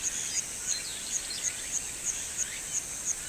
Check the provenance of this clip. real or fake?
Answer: real